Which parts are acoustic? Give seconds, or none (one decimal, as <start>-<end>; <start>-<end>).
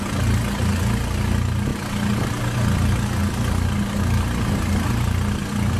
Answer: 0.0-5.8